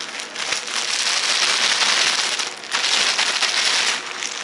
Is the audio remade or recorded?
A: recorded